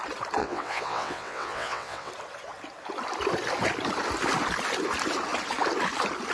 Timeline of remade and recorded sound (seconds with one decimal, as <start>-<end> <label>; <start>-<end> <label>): 0.0-0.4 recorded; 0.4-2.1 remade; 2.1-6.3 recorded